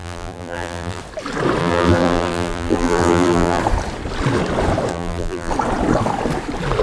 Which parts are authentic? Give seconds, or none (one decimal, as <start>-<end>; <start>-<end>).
1.0-1.6; 3.6-4.9; 5.5-6.8